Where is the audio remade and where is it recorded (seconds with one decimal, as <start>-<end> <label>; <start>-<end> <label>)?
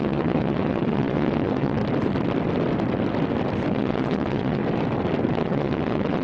0.0-1.8 remade; 1.8-3.7 recorded; 3.7-4.6 remade; 4.6-5.3 recorded; 5.3-6.2 remade